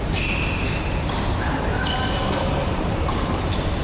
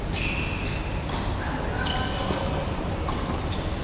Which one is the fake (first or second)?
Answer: first